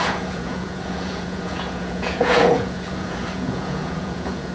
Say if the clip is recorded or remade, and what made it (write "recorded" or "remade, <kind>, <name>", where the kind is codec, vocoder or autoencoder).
remade, vocoder, Vocos